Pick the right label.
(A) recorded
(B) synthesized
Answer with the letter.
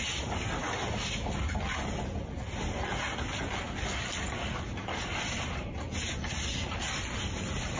A